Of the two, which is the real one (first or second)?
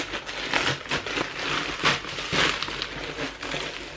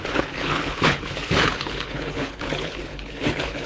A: first